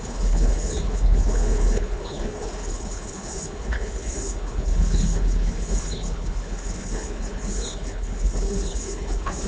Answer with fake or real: fake